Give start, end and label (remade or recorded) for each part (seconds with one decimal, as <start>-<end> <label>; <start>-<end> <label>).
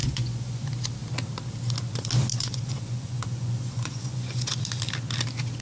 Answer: 0.0-0.6 remade; 0.6-2.3 recorded; 2.3-4.6 remade; 4.6-5.6 recorded